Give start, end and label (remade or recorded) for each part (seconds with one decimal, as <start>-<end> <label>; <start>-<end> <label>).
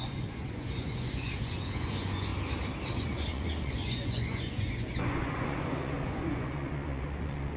0.0-2.3 remade; 2.3-3.0 recorded; 3.0-7.6 remade